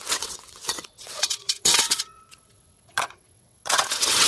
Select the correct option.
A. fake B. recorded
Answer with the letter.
A